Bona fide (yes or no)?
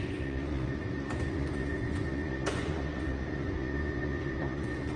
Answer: no